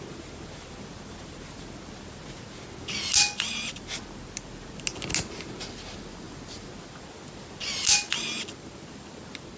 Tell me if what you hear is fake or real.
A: real